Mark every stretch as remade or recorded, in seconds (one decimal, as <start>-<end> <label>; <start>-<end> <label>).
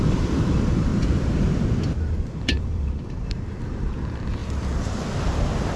0.0-0.9 remade; 0.9-2.3 recorded; 2.3-4.4 remade; 4.4-5.8 recorded